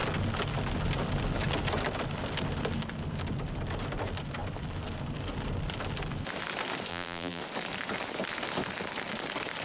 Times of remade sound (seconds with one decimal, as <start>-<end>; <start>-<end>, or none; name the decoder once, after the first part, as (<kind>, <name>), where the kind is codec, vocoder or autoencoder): 6.9-7.4 (vocoder, BigVGAN v2)